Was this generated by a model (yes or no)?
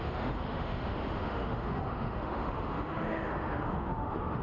yes